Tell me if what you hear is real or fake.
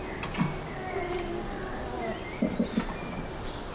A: real